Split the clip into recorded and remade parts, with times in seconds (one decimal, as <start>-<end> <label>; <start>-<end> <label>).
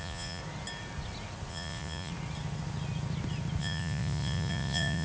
0.0-0.4 remade; 0.4-1.5 recorded; 1.5-2.1 remade; 2.1-3.6 recorded; 3.6-5.0 remade